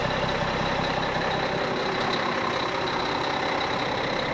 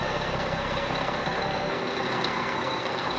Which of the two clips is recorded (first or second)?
first